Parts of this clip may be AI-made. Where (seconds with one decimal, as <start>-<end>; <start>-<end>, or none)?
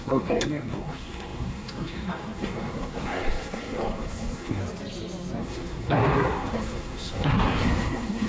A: 0.0-4.6; 5.4-8.3